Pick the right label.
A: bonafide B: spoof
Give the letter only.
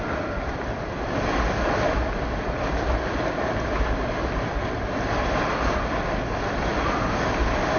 A